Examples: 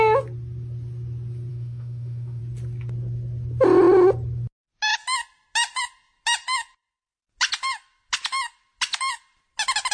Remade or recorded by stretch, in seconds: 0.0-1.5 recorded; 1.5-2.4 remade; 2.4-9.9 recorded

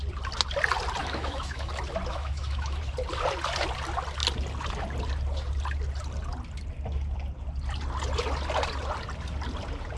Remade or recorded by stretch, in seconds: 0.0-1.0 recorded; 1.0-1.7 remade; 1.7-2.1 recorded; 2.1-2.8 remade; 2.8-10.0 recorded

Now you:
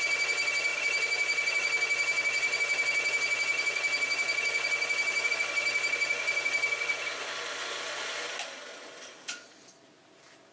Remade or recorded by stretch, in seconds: 0.0-10.5 recorded

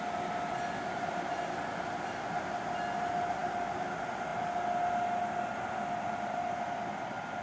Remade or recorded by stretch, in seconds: 0.0-7.4 recorded